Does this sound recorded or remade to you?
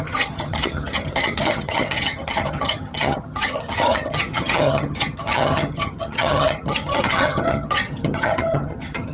remade